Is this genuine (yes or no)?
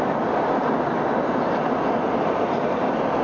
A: yes